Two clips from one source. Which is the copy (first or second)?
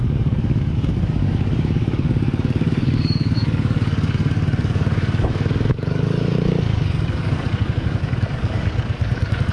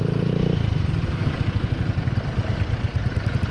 first